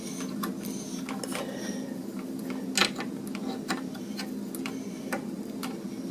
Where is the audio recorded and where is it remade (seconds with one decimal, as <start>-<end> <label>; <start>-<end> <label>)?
0.0-6.1 recorded